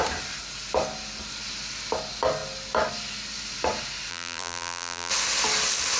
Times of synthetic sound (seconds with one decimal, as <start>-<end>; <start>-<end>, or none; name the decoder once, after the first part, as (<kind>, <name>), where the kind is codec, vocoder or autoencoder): 4.1-5.1 (vocoder, BigVGAN v2)